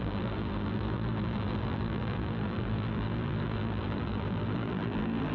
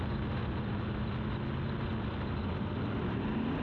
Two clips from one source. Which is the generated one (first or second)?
first